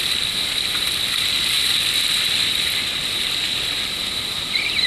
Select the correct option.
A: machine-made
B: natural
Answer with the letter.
A